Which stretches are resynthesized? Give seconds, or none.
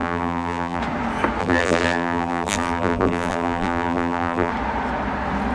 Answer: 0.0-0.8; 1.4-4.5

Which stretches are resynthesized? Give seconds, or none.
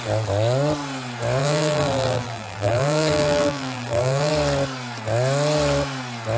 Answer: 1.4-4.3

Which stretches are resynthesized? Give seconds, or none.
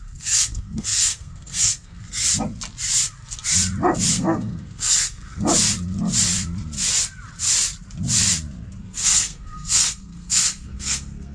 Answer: 0.0-2.2; 4.1-5.4; 8.8-11.3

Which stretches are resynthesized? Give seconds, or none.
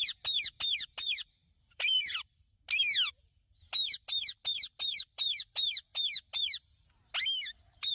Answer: 1.4-2.1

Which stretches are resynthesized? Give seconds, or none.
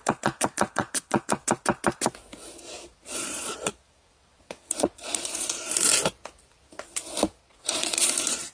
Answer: 0.0-1.4; 2.6-5.9; 7.4-8.5